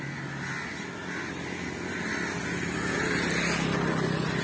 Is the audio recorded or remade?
recorded